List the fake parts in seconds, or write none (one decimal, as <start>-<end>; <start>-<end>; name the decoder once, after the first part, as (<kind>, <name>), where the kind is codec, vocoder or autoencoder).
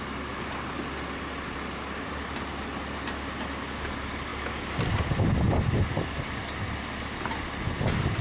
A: none